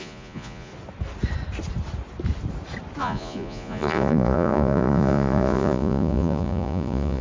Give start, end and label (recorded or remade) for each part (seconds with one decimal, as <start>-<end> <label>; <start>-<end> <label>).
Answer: 0.0-0.7 remade; 0.7-3.0 recorded; 3.0-7.2 remade